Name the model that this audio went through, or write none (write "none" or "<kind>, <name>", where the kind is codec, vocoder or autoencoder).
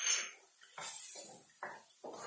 none